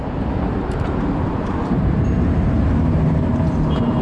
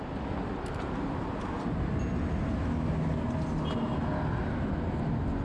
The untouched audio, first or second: second